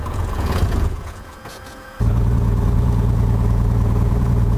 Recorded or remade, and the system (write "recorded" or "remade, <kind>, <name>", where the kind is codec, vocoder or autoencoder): remade, vocoder, Vocos